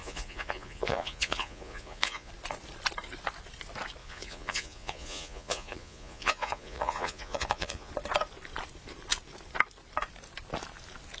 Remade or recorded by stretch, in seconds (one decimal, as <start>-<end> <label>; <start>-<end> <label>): 0.0-2.3 remade; 2.3-4.0 recorded; 4.0-7.9 remade; 7.9-11.2 recorded